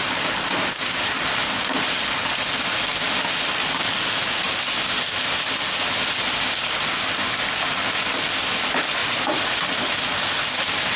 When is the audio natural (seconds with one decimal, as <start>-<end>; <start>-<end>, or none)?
0.0-9.0; 9.6-11.0